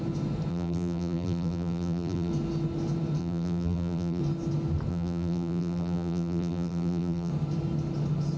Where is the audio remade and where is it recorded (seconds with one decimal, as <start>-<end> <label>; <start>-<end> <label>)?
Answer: 0.0-0.5 recorded; 0.5-2.3 remade; 2.3-3.2 recorded; 3.2-4.2 remade; 4.2-4.9 recorded; 4.9-7.3 remade; 7.3-8.4 recorded